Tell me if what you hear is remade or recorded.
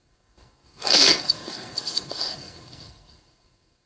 remade